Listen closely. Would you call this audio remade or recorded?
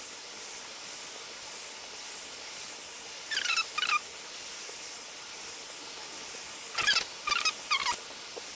recorded